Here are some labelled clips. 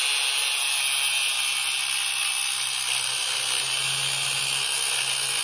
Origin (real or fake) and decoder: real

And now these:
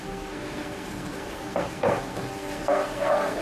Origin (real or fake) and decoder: fake, codec, SNAC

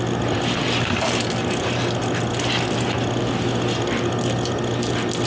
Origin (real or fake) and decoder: real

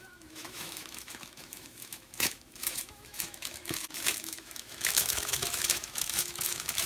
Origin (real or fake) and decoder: fake, autoencoder, DAC-VAE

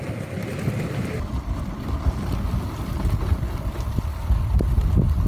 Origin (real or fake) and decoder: real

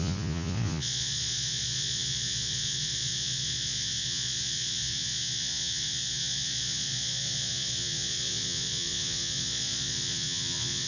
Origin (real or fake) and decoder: fake, vocoder, Vocos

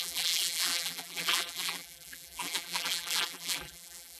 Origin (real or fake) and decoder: fake, vocoder, BigVGAN v2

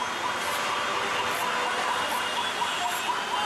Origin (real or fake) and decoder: real